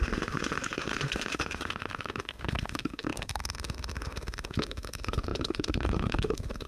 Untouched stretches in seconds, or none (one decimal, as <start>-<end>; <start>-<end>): none